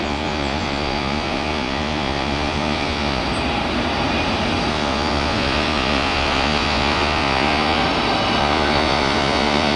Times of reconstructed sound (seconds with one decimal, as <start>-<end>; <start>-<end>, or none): 0.0-3.2; 4.7-7.8; 8.4-9.8